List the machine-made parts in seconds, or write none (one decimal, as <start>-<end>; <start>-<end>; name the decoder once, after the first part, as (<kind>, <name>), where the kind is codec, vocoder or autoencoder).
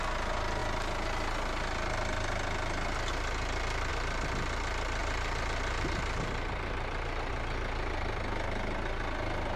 5.0-7.3 (vocoder, BigVGAN v2)